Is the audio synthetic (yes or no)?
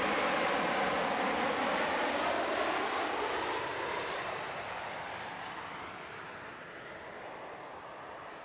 no